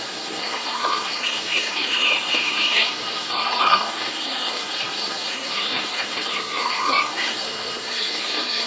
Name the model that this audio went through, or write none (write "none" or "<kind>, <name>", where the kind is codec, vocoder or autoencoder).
codec, SNAC